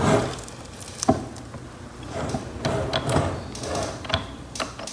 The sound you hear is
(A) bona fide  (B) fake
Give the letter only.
A